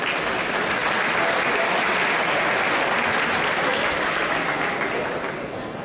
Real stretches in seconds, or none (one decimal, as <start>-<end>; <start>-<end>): 0.0-3.7; 4.5-5.8